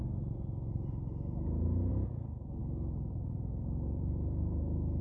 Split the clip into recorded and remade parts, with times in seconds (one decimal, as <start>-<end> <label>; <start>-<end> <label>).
0.0-5.0 recorded